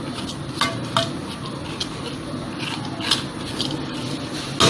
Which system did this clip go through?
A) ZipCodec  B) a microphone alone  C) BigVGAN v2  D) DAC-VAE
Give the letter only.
B